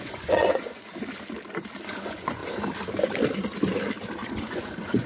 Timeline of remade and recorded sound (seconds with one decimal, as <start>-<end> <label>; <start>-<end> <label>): 0.0-0.9 remade; 0.9-1.9 recorded; 1.9-2.4 remade; 2.4-4.3 recorded; 4.3-5.1 remade